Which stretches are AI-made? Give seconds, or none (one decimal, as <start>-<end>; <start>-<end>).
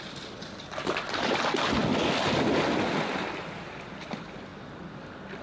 none